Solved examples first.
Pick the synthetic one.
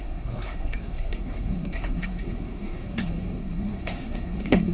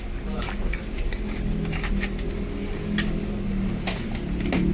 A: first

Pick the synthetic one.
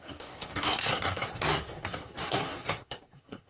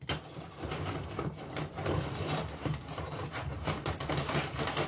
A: first